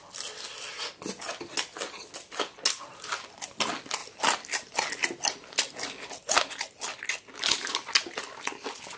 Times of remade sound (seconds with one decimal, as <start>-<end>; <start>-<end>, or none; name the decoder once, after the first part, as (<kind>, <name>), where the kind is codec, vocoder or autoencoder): none